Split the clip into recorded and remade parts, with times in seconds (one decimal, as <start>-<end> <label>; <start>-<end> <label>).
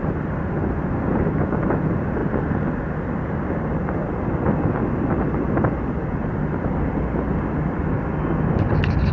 0.0-9.1 recorded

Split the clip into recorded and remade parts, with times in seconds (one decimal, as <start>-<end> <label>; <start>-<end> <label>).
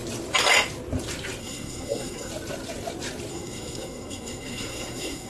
0.0-1.4 recorded; 1.4-2.3 remade; 2.3-3.3 recorded; 3.3-5.3 remade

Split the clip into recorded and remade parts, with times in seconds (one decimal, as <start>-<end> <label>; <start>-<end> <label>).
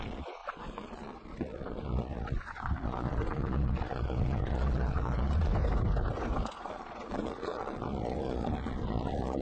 0.0-5.5 remade; 5.5-6.6 recorded; 6.6-9.4 remade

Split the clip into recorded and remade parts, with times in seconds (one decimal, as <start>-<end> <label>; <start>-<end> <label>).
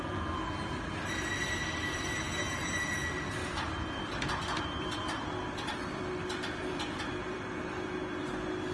0.0-3.4 recorded; 3.4-8.2 remade; 8.2-8.7 recorded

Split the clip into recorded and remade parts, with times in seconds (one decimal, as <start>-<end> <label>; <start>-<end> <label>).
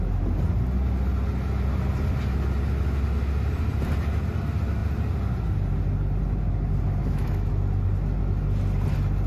0.0-7.0 recorded; 7.0-7.5 remade; 7.5-9.3 recorded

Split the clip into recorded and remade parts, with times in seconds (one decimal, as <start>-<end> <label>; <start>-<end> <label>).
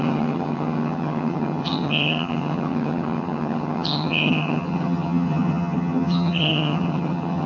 0.0-7.5 remade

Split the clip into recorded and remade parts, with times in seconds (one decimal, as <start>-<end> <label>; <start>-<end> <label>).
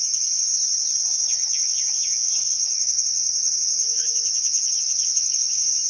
0.0-0.5 remade; 0.5-1.1 recorded; 1.1-5.9 remade